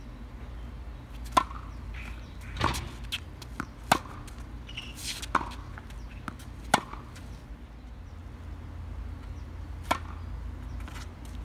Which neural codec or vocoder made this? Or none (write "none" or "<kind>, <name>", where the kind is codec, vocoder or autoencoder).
none